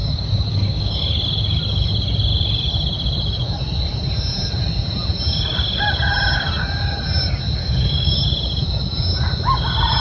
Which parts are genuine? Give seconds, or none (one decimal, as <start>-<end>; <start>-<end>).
1.0-7.6; 8.2-10.0